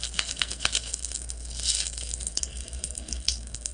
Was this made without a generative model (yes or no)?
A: no